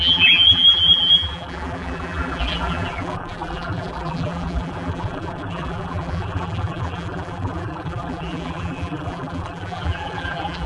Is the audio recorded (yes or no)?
no